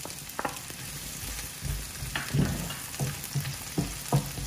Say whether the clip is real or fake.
real